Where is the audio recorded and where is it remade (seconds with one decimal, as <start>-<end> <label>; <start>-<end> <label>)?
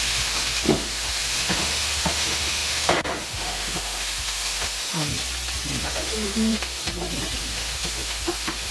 0.0-5.1 remade; 5.1-5.8 recorded; 5.8-6.8 remade; 6.8-7.4 recorded; 7.4-8.7 remade